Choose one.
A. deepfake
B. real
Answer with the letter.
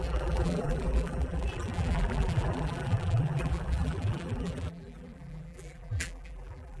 A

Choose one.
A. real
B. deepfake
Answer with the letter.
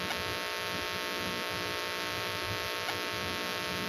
B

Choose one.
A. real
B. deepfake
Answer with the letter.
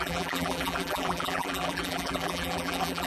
B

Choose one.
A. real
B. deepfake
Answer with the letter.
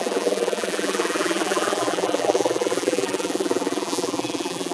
B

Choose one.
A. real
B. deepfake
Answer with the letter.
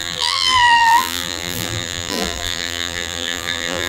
B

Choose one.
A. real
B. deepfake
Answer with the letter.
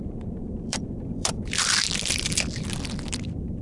B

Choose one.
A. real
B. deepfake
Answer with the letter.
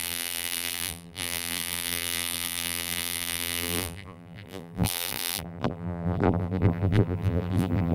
B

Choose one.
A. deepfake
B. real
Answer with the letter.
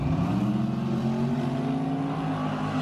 B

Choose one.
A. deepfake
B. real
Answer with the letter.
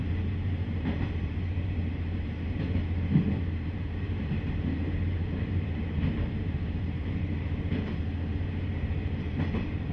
A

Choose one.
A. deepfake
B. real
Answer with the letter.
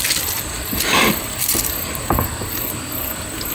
A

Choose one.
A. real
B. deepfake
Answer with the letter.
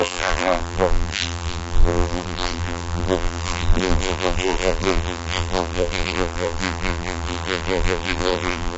B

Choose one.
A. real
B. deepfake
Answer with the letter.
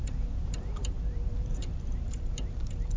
B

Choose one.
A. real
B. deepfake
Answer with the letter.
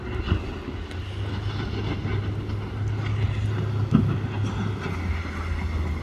A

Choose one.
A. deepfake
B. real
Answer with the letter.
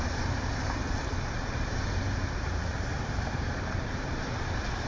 A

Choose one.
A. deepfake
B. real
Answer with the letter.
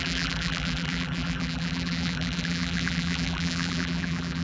A